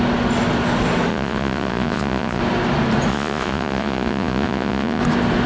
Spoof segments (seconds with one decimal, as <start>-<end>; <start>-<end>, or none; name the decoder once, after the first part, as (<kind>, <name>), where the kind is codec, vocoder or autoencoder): 1.1-2.4 (vocoder, Vocos); 3.1-5.0